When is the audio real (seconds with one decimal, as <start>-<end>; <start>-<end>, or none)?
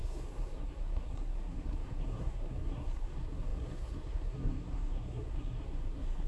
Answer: none